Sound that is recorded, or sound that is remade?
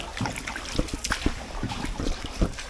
recorded